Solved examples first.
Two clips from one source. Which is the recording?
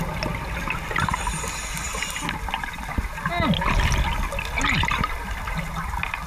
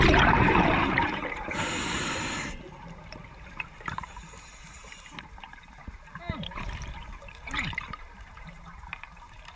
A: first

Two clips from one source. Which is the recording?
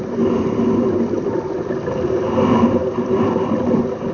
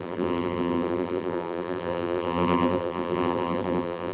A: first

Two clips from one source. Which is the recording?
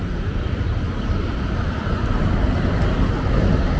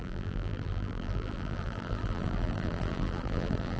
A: first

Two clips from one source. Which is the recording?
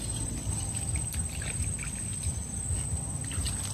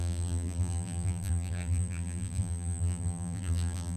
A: first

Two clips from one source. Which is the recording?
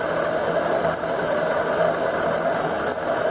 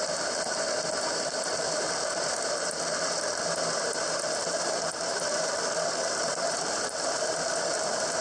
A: first